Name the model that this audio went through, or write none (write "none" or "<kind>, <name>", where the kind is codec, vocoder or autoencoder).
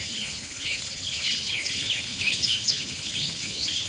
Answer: codec, HILCodec